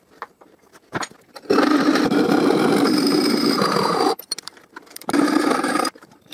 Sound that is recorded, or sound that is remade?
remade